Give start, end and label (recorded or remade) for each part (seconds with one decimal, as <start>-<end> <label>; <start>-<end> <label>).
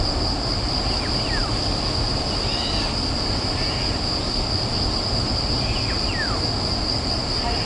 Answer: 0.0-7.7 recorded